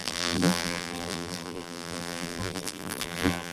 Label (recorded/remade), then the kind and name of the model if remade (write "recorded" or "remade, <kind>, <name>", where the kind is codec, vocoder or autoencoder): remade, vocoder, BigVGAN v2